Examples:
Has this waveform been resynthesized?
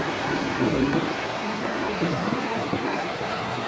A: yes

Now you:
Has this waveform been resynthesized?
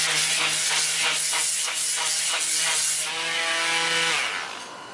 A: no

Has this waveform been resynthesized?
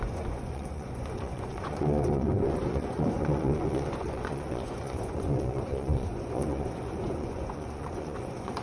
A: yes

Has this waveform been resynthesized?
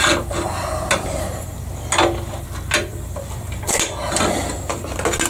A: no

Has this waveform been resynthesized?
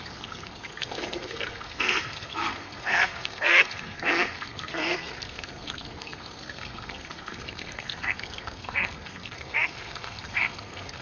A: yes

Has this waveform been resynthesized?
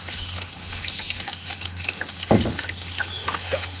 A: yes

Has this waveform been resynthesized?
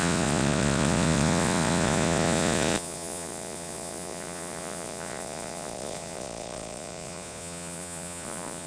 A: yes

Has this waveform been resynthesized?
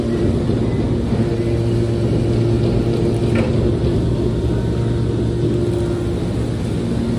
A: no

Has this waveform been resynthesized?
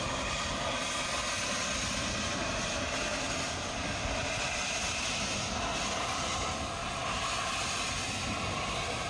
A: no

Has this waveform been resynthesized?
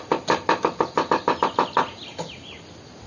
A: no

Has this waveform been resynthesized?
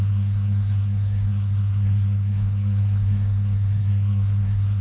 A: yes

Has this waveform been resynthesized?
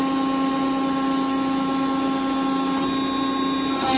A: no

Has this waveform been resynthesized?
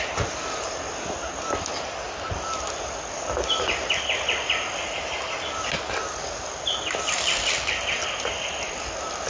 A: no